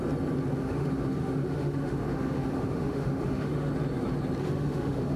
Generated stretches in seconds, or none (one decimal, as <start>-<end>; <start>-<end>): 0.6-3.7; 4.4-5.2